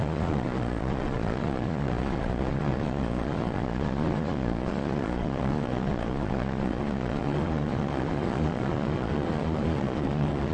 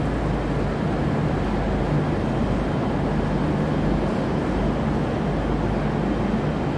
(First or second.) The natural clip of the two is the second